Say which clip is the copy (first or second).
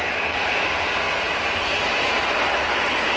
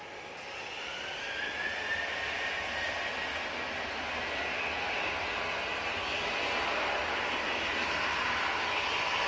first